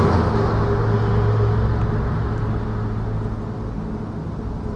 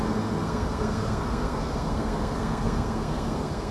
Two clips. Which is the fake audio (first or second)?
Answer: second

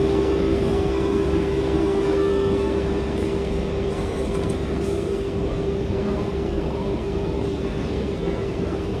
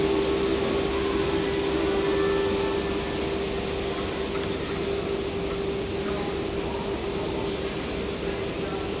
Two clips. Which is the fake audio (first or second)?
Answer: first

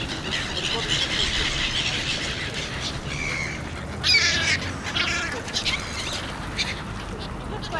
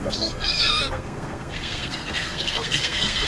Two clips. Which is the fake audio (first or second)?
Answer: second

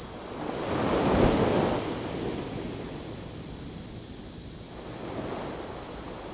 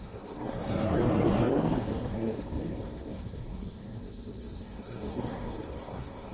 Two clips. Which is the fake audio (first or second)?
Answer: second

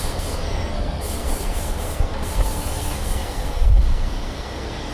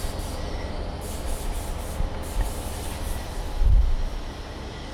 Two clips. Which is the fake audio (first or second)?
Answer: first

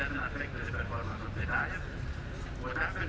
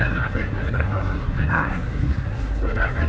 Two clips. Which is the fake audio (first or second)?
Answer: second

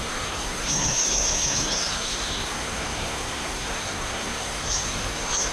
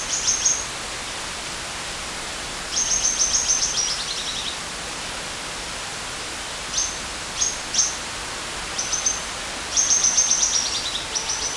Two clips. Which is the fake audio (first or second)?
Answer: first